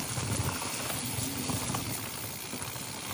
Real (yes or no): yes